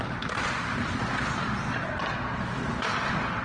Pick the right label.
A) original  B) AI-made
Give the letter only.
A